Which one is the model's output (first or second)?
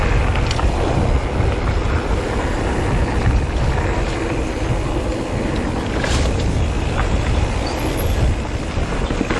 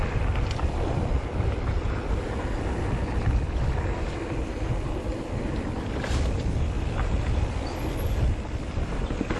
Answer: second